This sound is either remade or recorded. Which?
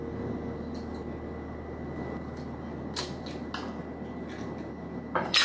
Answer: recorded